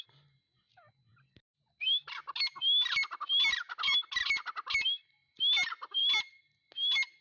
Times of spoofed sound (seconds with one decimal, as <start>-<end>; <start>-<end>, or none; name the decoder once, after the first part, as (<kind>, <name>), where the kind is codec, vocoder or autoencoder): none